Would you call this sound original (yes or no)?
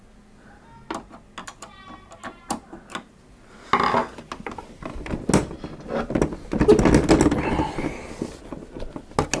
yes